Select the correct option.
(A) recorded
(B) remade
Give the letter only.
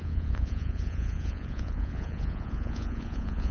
B